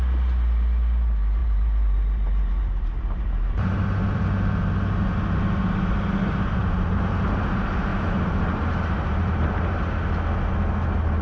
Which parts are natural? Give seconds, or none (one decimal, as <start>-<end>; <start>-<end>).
0.0-1.4; 4.2-7.9; 9.8-11.2

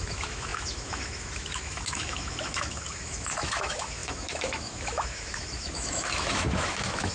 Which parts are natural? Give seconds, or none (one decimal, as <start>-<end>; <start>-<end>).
none

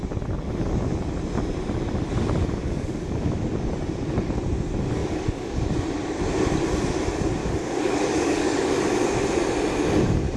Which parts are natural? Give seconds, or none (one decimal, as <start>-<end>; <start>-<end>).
0.0-2.4; 3.4-5.0; 5.7-7.4; 8.8-10.4

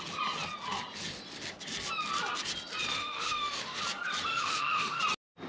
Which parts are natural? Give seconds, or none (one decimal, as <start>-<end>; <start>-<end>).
0.0-3.0; 3.8-4.3; 5.0-5.5